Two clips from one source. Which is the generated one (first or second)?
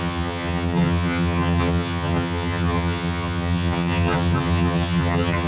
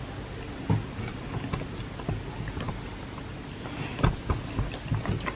first